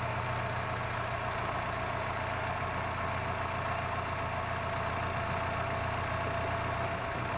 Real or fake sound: real